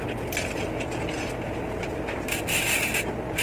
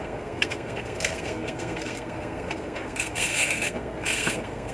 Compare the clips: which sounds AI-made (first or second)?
second